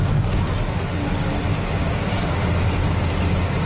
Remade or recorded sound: recorded